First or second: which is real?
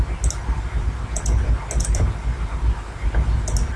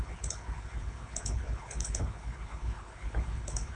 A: first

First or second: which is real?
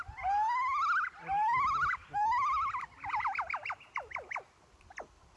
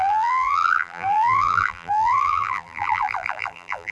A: first